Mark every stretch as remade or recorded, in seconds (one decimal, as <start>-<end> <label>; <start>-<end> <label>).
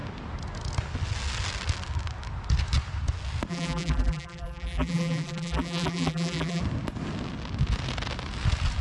0.0-3.5 recorded; 3.5-6.6 remade; 6.6-8.8 recorded